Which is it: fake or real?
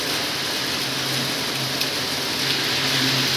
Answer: real